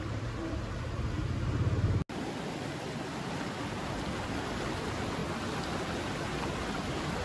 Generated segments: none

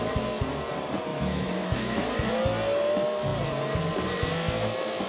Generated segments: 1.1-2.0 (autoencoder, DAC-VAE)

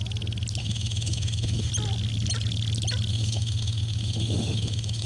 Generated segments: 0.6-1.7 (autoencoder, DAC-VAE); 3.1-5.1

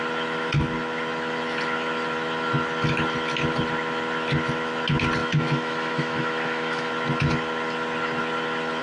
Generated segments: 5.2-6.9 (autoencoder, DAC-VAE)

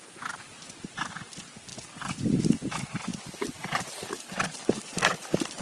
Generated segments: none

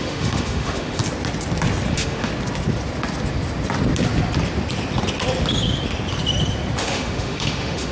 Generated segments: 0.0-1.0 (autoencoder, DAC-VAE); 1.9-2.3; 6.8-7.9

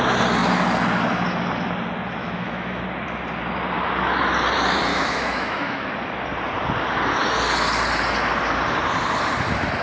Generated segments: 2.2-2.8 (autoencoder, DAC-VAE); 4.9-5.9